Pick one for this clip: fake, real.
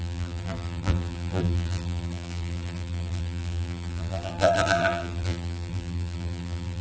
fake